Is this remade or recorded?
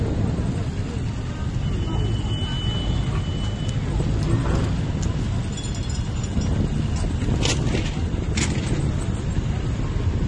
recorded